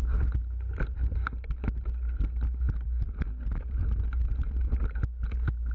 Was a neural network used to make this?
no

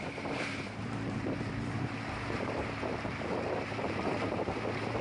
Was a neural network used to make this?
yes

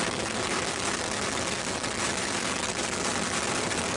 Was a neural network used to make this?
yes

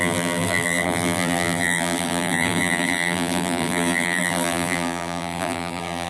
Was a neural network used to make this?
yes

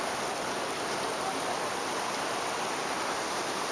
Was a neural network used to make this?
yes